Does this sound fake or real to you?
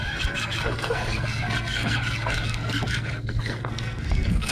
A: fake